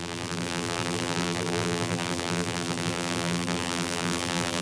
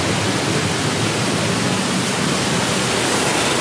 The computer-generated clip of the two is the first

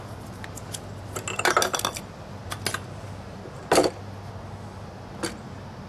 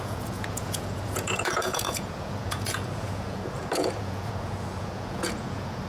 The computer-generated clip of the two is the second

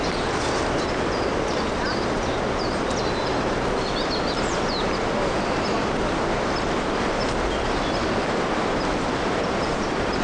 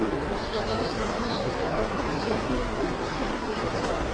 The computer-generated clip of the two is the second